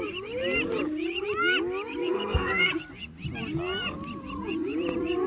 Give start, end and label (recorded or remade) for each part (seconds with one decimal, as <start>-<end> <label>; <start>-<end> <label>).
0.0-2.0 recorded; 2.0-2.7 remade; 2.7-5.3 recorded